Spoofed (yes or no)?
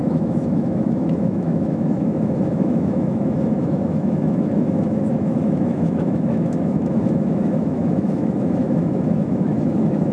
yes